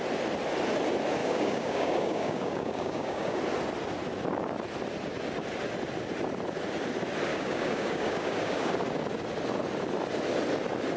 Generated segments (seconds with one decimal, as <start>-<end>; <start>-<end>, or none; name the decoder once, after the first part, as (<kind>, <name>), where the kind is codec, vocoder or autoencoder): 1.2-3.4 (codec, DAC); 7.3-8.7